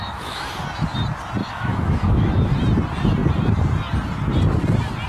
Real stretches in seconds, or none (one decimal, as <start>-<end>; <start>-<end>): 0.5-1.4; 2.3-5.1